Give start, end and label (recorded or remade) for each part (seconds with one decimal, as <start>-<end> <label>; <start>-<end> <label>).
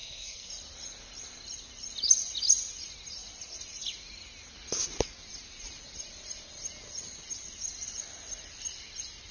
0.0-0.5 remade; 0.5-9.3 recorded